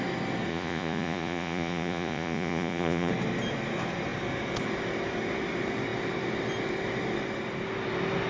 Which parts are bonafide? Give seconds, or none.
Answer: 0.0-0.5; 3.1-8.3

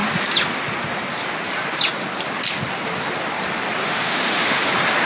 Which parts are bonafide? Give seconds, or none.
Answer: 0.0-3.8; 4.6-5.1

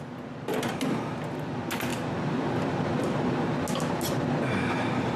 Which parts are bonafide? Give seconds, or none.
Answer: 0.0-5.2

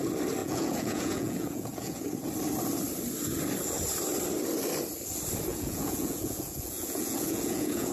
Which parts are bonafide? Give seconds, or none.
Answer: 0.0-0.4; 2.0-5.5

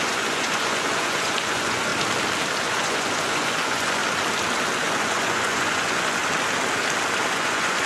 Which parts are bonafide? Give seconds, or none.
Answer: 1.9-2.6; 4.0-4.8; 6.2-7.3